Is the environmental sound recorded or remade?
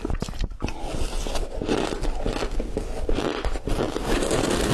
recorded